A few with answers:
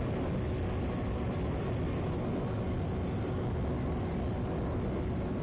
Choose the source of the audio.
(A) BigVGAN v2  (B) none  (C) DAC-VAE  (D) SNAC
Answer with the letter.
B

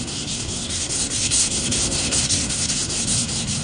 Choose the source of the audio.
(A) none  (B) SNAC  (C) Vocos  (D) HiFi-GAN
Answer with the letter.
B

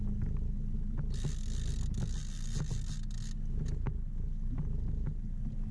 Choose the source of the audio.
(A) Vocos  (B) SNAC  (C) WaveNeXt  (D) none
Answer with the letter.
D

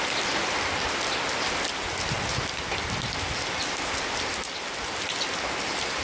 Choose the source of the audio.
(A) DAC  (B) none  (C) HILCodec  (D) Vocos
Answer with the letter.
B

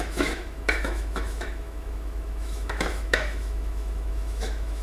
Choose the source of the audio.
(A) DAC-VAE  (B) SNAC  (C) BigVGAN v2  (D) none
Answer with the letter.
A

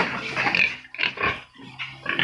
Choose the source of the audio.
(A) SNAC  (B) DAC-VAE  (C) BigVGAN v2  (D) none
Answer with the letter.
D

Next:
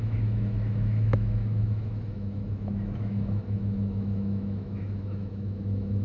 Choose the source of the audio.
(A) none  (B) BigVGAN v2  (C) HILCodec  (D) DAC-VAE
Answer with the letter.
D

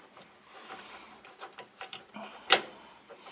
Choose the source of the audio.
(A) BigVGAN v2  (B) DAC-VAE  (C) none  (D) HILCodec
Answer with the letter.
A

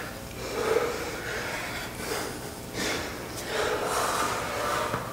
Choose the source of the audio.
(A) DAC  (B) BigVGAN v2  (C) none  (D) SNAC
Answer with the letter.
C